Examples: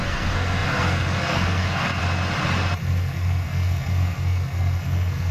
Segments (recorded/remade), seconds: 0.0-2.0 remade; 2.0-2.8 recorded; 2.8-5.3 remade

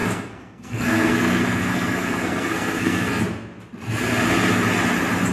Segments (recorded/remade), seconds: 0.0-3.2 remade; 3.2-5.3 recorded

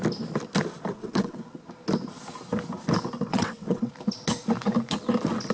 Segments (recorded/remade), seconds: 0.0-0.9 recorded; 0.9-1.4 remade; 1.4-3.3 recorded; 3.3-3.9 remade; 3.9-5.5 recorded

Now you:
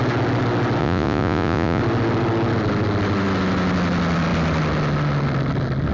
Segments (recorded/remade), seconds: 0.0-0.8 recorded; 0.8-1.8 remade; 1.8-5.9 recorded

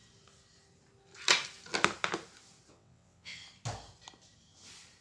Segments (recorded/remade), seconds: 0.0-2.7 recorded; 2.7-3.4 remade; 3.4-5.0 recorded

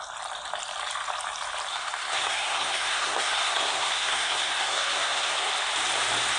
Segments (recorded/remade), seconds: 0.0-1.7 recorded; 1.7-5.5 remade; 5.5-6.4 recorded

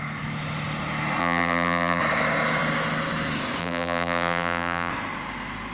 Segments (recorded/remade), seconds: 0.0-1.2 recorded; 1.2-2.0 remade; 2.0-3.6 recorded; 3.6-4.9 remade; 4.9-5.7 recorded